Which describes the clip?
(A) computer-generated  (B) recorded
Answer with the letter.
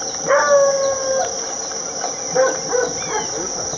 B